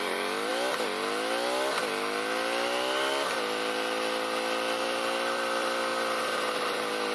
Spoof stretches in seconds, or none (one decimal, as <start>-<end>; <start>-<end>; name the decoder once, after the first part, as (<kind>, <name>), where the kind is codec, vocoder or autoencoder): 0.0-0.5 (vocoder, BigVGAN v2); 4.8-5.9; 6.6-7.1